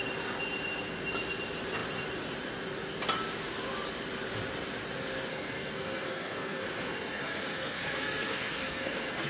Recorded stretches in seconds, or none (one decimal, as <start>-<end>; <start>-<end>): 0.0-5.3